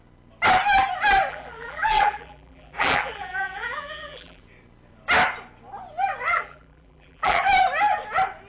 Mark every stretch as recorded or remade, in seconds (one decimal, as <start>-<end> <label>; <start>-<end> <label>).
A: 0.0-1.3 recorded; 1.3-4.4 remade; 4.4-6.3 recorded; 6.3-7.4 remade; 7.4-8.5 recorded